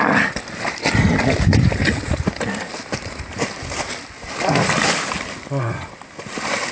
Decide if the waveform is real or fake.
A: real